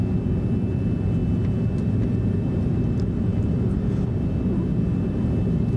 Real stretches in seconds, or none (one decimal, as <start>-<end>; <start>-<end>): 0.0-2.7; 4.2-5.8